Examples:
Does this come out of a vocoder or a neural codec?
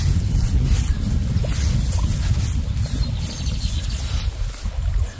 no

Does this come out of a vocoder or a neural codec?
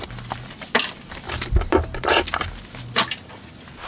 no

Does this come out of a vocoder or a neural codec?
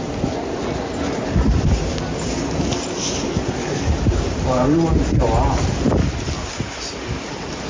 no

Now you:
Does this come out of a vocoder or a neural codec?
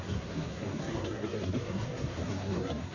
yes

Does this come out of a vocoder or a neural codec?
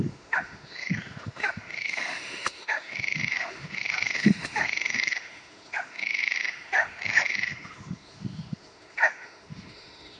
yes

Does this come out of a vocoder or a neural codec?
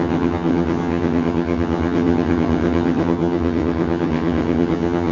yes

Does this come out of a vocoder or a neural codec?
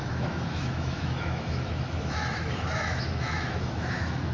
yes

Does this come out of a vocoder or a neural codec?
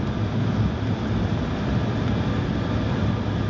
yes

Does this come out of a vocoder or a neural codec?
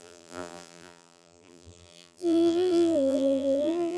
yes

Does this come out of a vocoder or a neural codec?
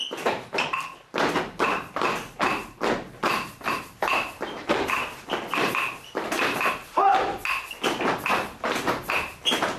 no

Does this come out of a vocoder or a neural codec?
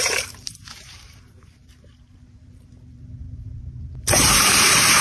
yes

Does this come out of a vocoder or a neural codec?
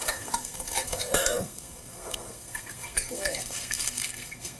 yes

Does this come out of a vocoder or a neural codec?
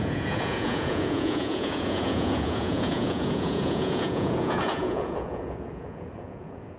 yes